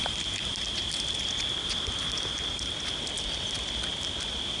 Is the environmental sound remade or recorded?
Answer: remade